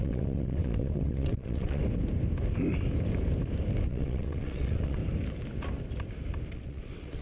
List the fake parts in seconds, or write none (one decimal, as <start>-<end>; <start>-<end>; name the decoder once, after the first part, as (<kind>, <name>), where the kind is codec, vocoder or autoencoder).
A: 0.0-1.8 (vocoder, WaveNeXt); 3.9-5.0; 6.5-7.2